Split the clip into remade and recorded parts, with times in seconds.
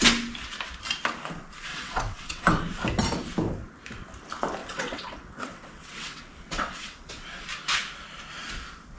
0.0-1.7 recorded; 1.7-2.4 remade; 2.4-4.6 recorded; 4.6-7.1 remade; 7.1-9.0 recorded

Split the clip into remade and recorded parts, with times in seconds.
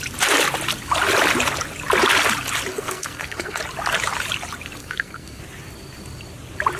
0.0-2.7 recorded; 2.7-3.6 remade; 3.6-4.8 recorded; 4.8-5.4 remade; 5.4-6.8 recorded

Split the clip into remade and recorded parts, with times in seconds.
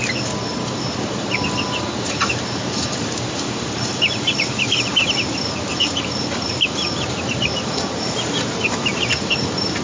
0.0-0.5 recorded; 0.5-5.1 remade; 5.1-5.7 recorded; 5.7-9.8 remade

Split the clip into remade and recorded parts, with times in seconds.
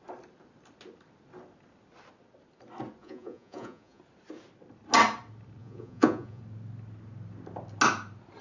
0.0-3.0 recorded; 3.0-4.0 remade; 4.0-5.6 recorded; 5.6-6.4 remade; 6.4-8.4 recorded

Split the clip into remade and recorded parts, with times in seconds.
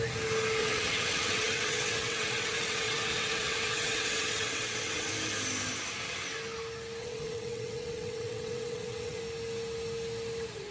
0.0-0.6 recorded; 0.6-5.1 remade; 5.1-7.0 recorded; 7.0-9.2 remade; 9.2-10.7 recorded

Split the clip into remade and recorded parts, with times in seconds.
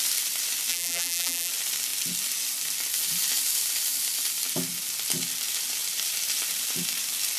0.0-0.7 recorded; 0.7-1.5 remade; 1.5-7.4 recorded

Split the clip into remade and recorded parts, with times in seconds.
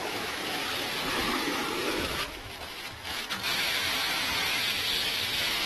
0.0-0.6 remade; 0.6-1.1 recorded; 1.1-5.7 remade